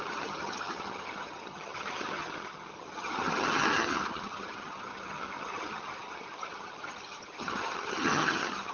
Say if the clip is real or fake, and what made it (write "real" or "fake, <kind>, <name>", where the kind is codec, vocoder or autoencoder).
fake, vocoder, HiFi-GAN